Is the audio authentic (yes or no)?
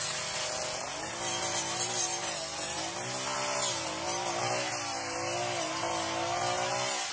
yes